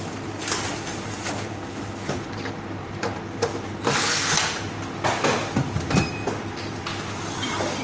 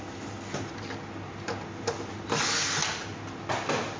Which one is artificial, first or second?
first